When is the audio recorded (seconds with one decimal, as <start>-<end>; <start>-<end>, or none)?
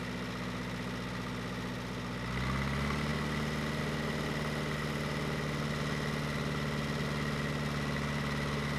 0.0-8.8